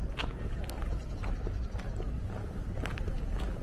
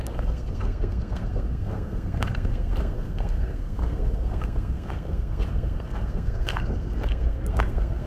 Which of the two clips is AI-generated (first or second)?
second